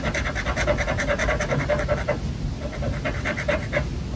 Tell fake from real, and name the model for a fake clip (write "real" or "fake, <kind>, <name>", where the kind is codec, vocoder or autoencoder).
real